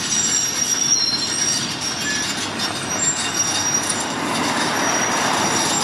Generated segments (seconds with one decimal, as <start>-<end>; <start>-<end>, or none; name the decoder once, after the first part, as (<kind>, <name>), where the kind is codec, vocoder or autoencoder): none